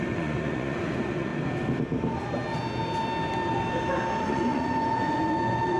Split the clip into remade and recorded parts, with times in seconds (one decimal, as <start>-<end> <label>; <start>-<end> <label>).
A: 0.0-1.3 remade; 1.3-4.2 recorded; 4.2-5.8 remade